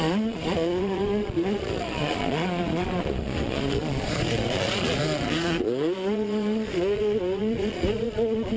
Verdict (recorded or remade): remade